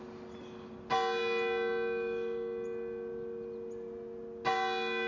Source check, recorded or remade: recorded